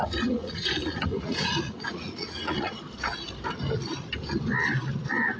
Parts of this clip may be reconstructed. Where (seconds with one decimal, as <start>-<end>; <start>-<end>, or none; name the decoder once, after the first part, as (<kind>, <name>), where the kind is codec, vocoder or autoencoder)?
0.4-2.8 (vocoder, Vocos)